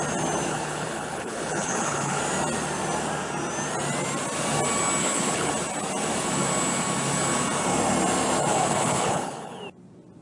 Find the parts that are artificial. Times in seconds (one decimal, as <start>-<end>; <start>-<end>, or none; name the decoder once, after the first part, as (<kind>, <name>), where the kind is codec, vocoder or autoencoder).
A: 0.5-2.2 (codec, HILCodec); 5.0-5.5; 8.5-9.6